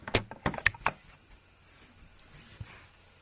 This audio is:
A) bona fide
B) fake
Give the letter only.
A